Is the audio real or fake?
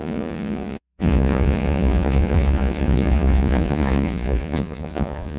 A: fake